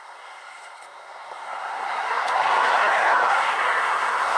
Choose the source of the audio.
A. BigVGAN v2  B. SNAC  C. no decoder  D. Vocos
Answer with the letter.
B